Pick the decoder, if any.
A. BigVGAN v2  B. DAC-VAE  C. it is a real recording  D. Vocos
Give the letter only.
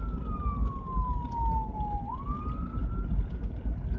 C